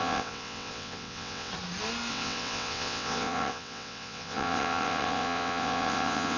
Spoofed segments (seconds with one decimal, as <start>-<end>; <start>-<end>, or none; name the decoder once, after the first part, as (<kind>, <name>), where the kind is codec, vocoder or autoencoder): 0.0-1.5 (vocoder, WaveNeXt); 2.1-6.4